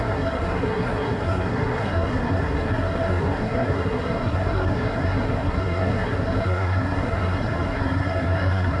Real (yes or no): no